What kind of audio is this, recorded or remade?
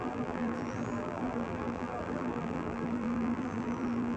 remade